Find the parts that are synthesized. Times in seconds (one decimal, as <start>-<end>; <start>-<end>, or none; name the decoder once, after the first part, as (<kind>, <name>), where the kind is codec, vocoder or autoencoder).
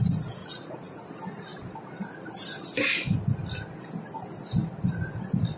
0.4-1.0 (vocoder, Vocos)